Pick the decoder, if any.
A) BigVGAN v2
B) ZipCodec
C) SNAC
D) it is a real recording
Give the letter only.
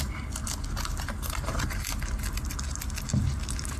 D